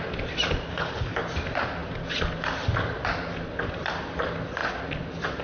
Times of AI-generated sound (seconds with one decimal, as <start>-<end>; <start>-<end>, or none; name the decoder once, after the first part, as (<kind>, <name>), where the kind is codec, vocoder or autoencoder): 0.7-1.2 (codec, HILCodec)